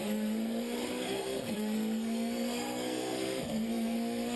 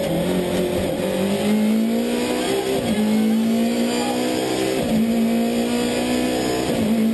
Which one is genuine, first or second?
second